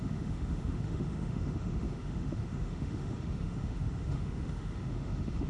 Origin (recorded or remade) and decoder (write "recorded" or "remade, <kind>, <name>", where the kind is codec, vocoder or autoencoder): remade, autoencoder, DAC-VAE